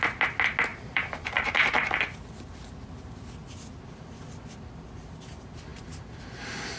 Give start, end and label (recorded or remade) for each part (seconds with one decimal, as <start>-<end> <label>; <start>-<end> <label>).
0.0-0.7 recorded; 0.7-1.9 remade; 1.9-6.8 recorded